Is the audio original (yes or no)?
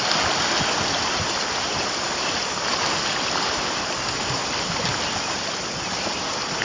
yes